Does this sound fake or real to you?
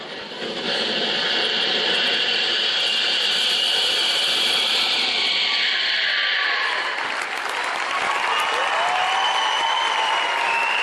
real